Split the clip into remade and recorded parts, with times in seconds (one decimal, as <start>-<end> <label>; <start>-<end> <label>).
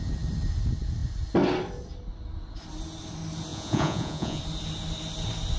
0.0-3.5 recorded; 3.5-4.4 remade; 4.4-5.6 recorded